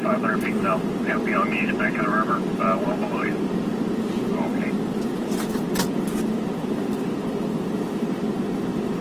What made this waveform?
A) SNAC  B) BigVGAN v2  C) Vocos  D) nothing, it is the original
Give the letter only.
D